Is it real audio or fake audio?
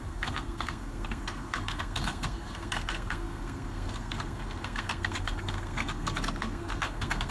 fake